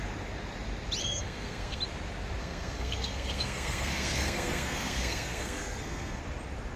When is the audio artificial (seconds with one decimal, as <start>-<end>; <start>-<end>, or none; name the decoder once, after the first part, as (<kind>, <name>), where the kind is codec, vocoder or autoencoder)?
1.0-1.8 (codec, SNAC); 2.4-6.2